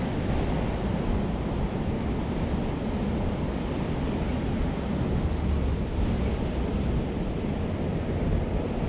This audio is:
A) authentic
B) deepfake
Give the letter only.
A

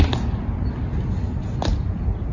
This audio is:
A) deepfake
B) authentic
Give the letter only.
B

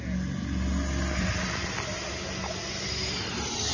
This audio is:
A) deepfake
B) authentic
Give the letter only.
B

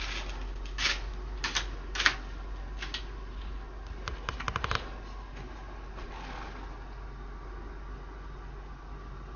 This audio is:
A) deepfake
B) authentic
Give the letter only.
B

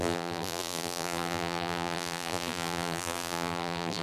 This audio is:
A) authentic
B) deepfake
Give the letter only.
B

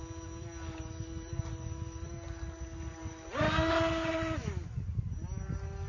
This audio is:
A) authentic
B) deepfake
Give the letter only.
A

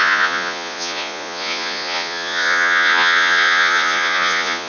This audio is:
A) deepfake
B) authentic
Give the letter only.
A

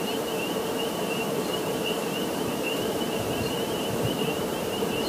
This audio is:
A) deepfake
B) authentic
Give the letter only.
A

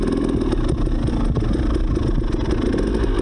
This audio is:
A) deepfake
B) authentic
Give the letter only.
B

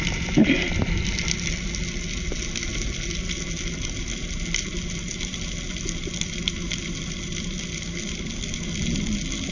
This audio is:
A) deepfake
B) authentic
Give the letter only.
B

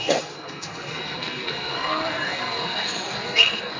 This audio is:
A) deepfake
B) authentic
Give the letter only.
A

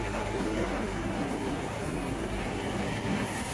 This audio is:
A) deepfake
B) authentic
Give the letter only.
A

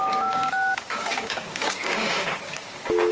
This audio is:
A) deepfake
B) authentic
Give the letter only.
A